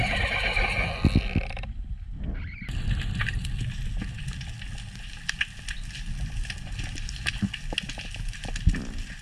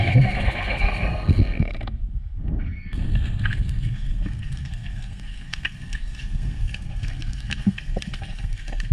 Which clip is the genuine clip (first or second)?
first